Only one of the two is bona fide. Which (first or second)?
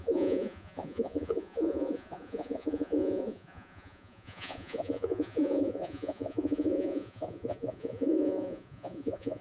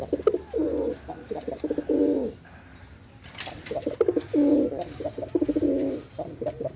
second